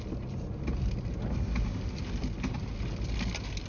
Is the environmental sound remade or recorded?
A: recorded